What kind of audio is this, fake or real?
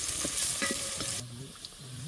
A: fake